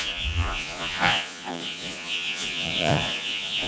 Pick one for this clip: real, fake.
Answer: fake